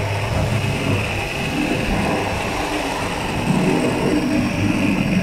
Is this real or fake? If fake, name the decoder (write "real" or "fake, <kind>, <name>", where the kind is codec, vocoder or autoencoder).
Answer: real